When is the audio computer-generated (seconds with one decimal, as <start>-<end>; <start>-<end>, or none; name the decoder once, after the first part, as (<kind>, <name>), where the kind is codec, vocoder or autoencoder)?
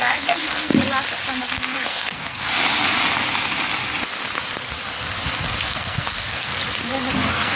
0.0-0.7 (codec, SNAC); 1.4-2.5; 5.6-6.5; 7.1-7.6